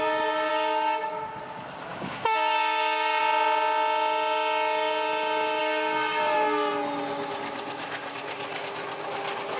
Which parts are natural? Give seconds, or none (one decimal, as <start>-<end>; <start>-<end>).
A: 0.0-0.5; 1.4-1.9; 3.2-5.6; 6.7-9.6